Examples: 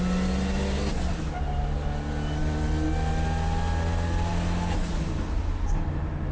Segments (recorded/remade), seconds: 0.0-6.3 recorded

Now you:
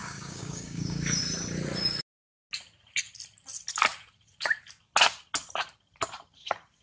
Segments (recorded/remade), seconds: 0.0-1.2 remade; 1.2-6.8 recorded

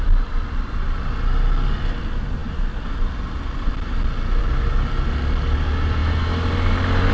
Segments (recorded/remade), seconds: 0.0-7.1 recorded

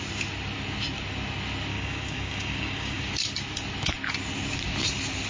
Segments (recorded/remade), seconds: 0.0-1.7 recorded; 1.7-3.1 remade; 3.1-5.3 recorded

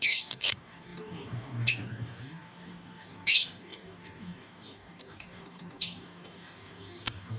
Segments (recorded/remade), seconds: 0.0-7.4 remade

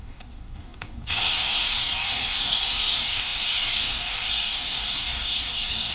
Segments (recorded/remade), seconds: 0.0-5.9 remade

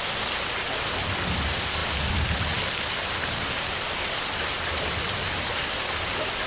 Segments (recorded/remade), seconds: 0.0-6.5 recorded

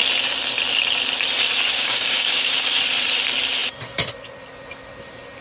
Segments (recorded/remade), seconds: 0.0-1.7 recorded; 1.7-2.8 remade; 2.8-5.4 recorded